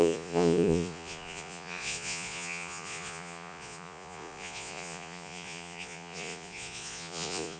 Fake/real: fake